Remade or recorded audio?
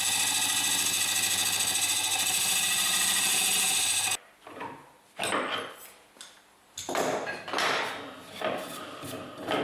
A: recorded